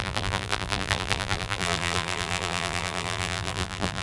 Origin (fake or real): fake